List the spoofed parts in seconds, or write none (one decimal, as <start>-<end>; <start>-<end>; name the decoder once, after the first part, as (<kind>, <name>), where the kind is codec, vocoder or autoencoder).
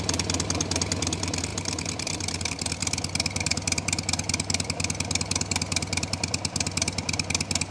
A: none